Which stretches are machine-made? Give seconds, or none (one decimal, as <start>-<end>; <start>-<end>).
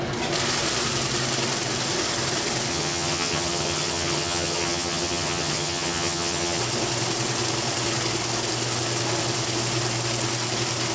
2.7-6.6